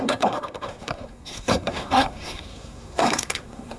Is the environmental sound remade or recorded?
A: remade